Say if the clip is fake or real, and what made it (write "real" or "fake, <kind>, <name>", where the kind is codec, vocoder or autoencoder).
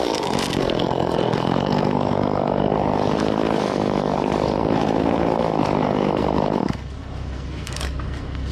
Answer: fake, codec, SNAC